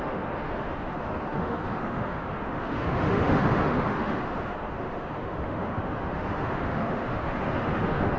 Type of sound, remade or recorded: remade